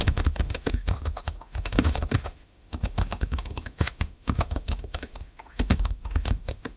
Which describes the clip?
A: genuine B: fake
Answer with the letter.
B